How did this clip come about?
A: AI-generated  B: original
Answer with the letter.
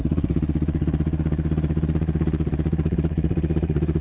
A